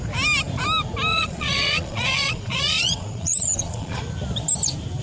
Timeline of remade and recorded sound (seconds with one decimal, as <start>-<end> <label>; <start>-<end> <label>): 0.0-1.1 recorded; 1.1-4.0 remade; 4.0-5.0 recorded